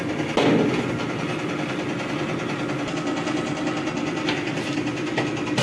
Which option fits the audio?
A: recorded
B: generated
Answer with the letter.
A